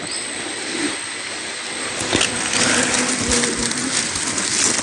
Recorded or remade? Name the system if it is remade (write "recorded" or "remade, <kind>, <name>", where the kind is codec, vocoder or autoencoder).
recorded